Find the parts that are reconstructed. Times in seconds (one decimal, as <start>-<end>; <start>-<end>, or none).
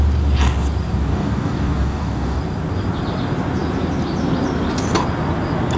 1.1-2.4